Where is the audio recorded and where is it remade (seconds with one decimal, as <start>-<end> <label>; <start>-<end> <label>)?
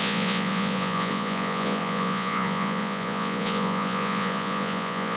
0.0-5.2 remade